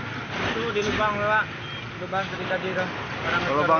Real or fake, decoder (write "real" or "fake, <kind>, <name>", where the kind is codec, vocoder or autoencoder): real